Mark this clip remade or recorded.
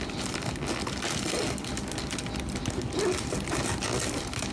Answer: recorded